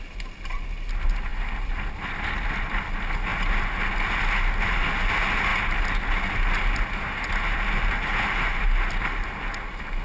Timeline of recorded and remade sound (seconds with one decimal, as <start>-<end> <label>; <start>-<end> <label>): 0.0-10.0 recorded